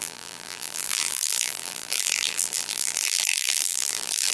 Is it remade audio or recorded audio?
remade